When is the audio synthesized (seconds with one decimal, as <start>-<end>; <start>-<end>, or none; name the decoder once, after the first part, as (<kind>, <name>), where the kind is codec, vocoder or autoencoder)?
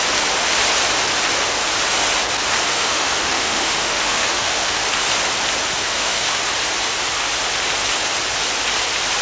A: 2.7-4.8 (autoencoder, DAC-VAE); 5.8-6.4